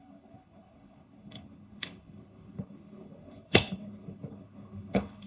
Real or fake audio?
fake